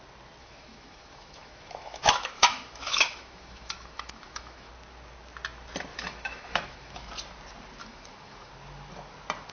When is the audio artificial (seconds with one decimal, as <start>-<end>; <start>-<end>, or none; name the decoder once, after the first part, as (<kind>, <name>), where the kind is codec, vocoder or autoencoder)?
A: 0.4-4.7 (autoencoder, DAC-VAE); 5.9-7.1; 7.8-8.5